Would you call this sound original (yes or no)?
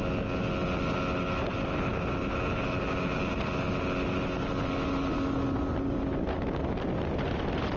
yes